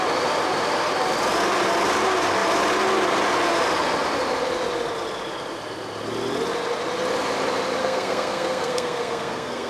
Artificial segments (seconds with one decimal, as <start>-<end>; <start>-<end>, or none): 7.8-9.7